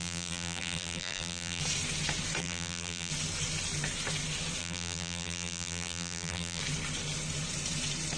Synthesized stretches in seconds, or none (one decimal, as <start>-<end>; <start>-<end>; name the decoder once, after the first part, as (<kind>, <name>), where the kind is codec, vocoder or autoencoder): 0.0-1.6 (vocoder, BigVGAN v2); 2.4-3.1; 4.6-6.6